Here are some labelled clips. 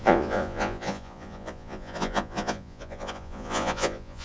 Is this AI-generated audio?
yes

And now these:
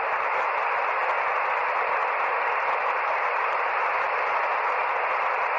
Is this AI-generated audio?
no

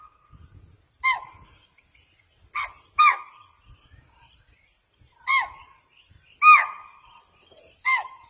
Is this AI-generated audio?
no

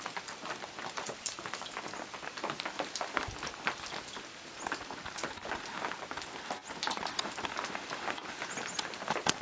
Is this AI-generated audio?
no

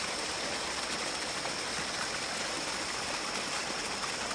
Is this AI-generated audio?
no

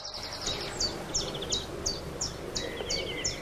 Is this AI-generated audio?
no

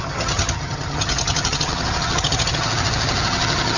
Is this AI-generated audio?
yes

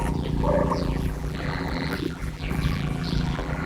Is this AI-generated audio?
yes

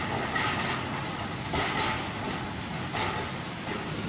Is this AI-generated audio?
no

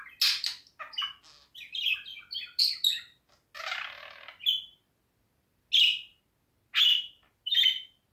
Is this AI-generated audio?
no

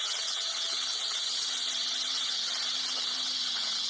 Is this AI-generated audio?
yes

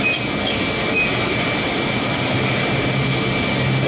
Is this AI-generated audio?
no